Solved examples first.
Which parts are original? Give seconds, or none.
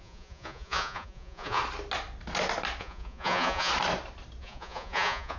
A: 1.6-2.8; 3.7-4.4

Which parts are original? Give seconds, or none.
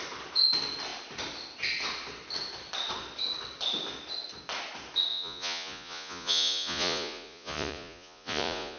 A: 0.0-5.1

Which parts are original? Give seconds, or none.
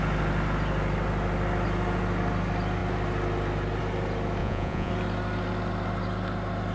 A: 0.0-4.4; 4.9-6.7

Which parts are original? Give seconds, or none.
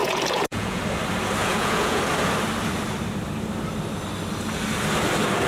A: 0.8-1.4; 2.0-5.5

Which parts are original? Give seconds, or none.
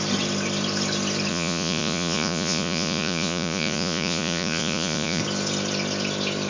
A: 0.0-1.3; 5.2-6.5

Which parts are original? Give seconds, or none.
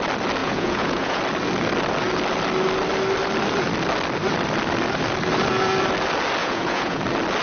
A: 0.0-0.4; 1.2-6.4; 7.0-7.4